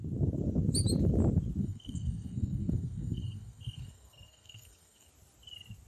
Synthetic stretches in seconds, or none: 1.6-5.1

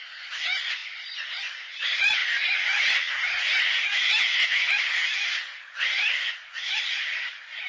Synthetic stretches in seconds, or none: none

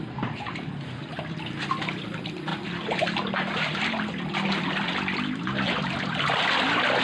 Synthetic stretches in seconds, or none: none

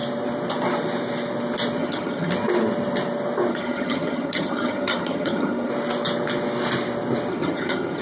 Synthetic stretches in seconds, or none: 1.8-2.3; 3.5-5.7; 7.3-8.0